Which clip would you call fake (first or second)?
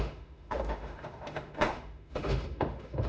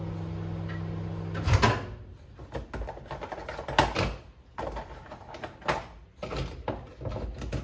first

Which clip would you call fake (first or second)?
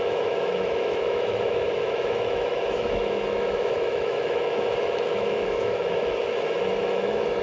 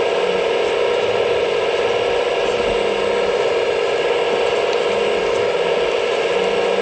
first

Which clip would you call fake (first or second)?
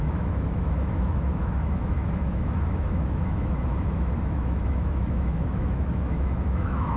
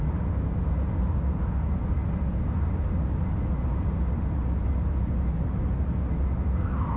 first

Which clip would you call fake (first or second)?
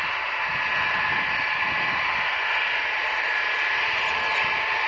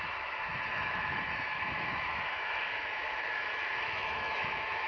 second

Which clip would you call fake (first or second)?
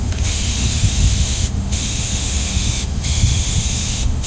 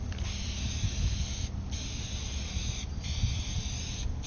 first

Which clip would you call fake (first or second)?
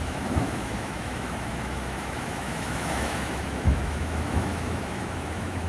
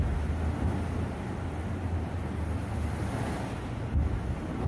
first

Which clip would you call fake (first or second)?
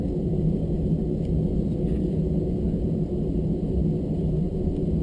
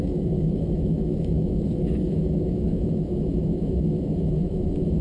second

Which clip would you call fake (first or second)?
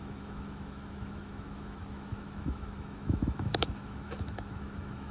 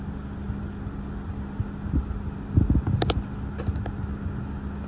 first